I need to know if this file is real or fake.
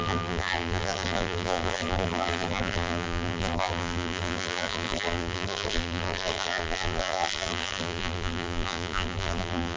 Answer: fake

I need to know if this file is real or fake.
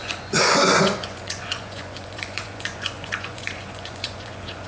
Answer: fake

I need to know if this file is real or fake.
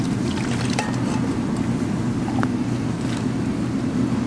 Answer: real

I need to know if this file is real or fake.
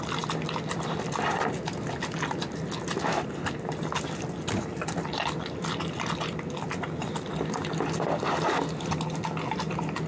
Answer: real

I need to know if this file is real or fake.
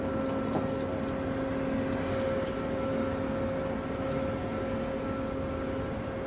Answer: real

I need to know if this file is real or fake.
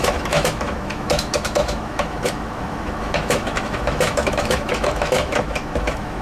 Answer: fake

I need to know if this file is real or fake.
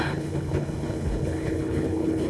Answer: fake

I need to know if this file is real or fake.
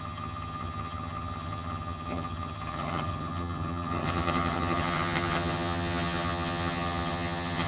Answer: fake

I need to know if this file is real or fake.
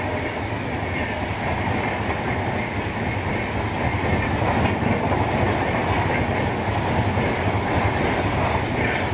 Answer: real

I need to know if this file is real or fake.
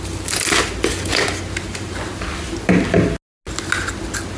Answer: real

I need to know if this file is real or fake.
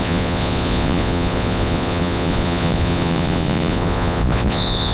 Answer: fake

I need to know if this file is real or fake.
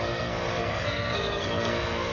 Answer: fake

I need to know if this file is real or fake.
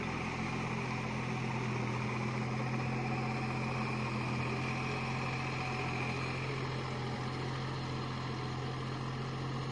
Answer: real